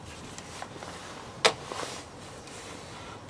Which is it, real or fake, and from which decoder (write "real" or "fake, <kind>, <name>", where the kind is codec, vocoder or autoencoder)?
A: real